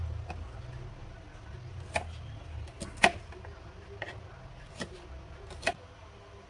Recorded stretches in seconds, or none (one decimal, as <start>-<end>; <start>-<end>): 0.0-6.5

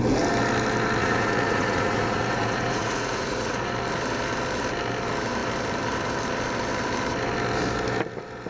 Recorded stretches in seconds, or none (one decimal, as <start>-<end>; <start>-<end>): 0.0-1.0; 3.7-8.5

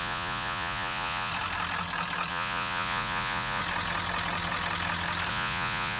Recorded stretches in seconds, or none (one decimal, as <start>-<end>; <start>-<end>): 1.3-2.3; 3.6-5.3

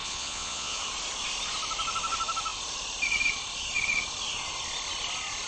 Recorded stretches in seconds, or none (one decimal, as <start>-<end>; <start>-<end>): 0.8-5.5

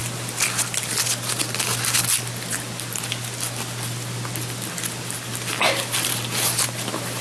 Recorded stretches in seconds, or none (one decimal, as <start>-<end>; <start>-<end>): 0.0-7.2

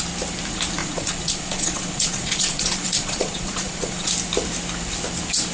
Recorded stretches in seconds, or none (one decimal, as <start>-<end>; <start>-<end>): 0.0-0.8; 4.1-5.5